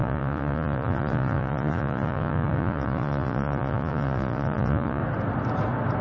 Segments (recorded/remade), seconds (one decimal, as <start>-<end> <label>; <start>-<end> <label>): 0.0-5.0 remade; 5.0-6.0 recorded